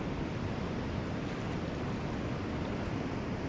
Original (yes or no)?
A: yes